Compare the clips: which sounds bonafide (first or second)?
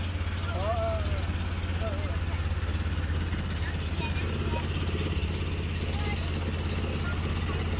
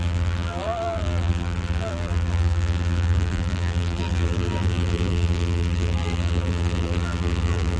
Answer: first